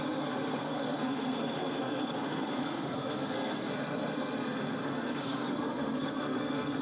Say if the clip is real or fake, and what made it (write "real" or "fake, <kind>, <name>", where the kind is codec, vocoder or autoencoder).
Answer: fake, codec, SNAC